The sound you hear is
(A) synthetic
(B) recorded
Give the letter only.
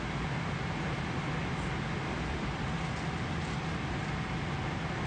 B